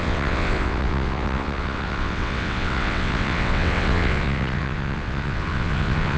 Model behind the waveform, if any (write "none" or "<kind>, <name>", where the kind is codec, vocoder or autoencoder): vocoder, WaveNeXt